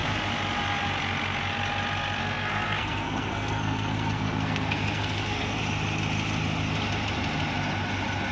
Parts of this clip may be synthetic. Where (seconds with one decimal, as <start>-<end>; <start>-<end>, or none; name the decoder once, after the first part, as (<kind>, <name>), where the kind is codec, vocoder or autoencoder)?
2.2-5.6 (codec, SNAC)